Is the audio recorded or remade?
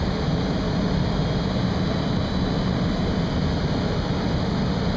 recorded